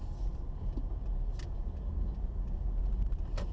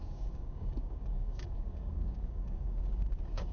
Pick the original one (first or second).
first